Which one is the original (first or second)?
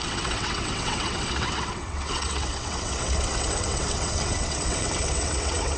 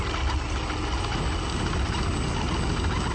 second